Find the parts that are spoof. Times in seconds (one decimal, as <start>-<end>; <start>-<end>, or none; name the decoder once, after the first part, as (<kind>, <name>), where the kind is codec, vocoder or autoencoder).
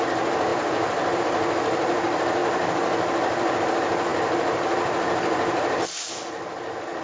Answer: none